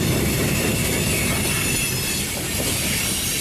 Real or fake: real